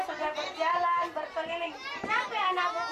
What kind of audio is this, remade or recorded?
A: recorded